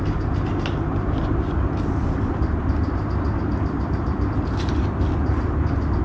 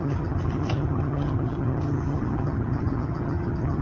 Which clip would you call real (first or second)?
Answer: first